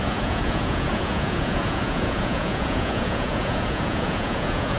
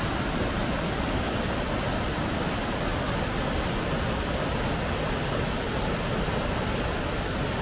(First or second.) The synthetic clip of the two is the first